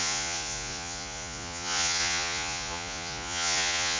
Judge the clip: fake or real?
fake